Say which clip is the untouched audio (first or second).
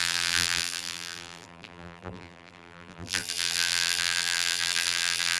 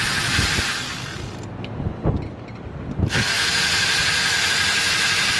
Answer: second